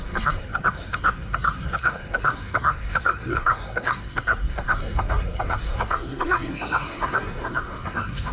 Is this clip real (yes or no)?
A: no